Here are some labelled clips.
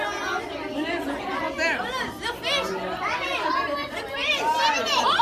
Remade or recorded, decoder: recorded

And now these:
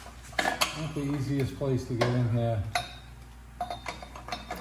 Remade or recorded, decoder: recorded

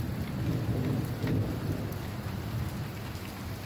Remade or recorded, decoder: recorded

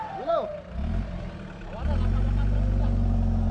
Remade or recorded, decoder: recorded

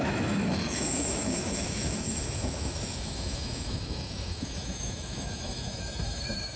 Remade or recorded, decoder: remade, autoencoder, DAC-VAE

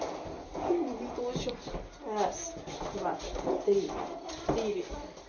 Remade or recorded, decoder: recorded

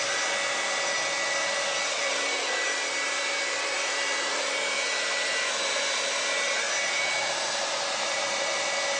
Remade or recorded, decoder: recorded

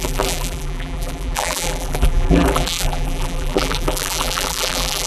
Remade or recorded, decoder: remade, vocoder, BigVGAN v2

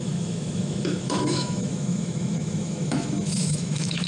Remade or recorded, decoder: remade, autoencoder, DAC-VAE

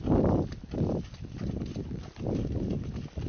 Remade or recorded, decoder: recorded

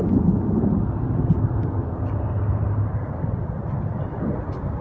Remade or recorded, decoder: remade, vocoder, BigVGAN v2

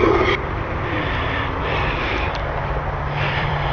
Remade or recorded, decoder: remade, vocoder, BigVGAN v2